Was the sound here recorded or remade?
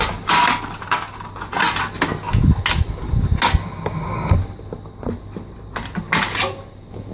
recorded